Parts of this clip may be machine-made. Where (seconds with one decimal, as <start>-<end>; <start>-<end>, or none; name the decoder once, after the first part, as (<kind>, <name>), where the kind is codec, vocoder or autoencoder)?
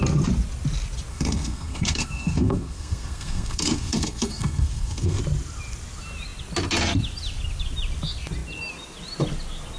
1.1-5.2 (codec, SNAC)